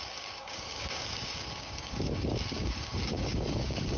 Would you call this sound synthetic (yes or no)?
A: yes